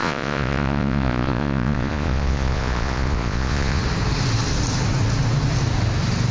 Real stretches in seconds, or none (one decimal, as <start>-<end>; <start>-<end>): 3.8-6.3